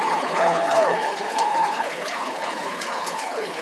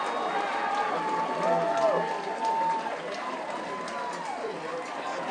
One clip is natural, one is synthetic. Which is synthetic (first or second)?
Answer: first